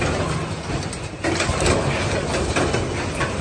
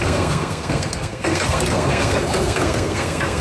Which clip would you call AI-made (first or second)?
second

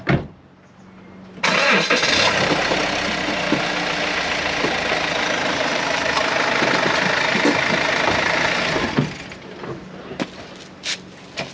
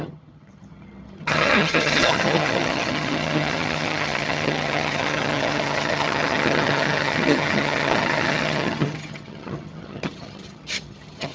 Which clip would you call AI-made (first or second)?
second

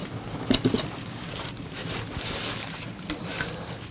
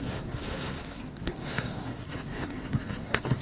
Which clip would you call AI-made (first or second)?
second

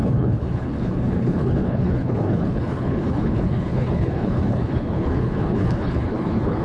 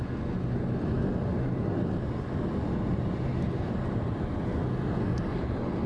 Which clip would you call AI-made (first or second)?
first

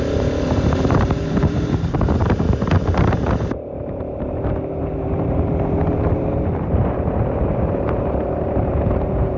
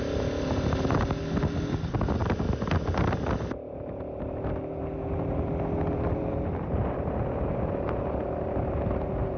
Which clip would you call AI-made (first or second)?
first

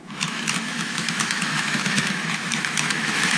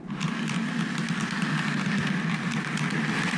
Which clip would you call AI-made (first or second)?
first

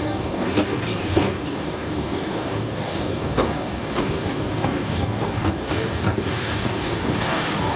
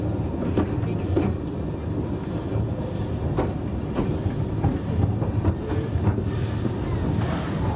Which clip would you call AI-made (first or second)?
first